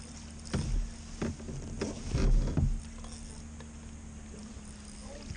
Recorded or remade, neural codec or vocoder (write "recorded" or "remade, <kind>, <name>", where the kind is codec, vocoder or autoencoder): recorded